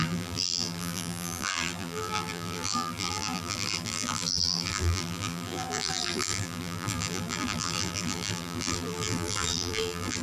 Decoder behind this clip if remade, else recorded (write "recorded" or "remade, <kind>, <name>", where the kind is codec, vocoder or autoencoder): remade, vocoder, BigVGAN v2